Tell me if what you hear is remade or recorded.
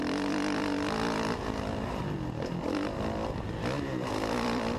recorded